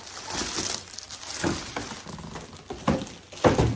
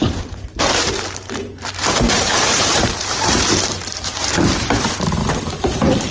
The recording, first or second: first